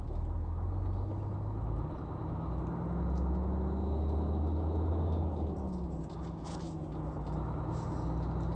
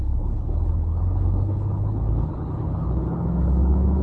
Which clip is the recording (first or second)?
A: first